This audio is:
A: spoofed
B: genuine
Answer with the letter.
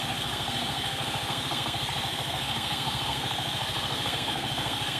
A